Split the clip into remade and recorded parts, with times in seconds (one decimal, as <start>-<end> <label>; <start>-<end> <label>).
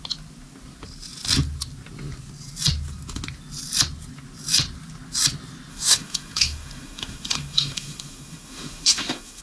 0.0-5.7 recorded; 5.7-9.4 remade